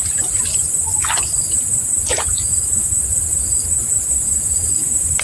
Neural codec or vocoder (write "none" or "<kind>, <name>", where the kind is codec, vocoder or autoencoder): none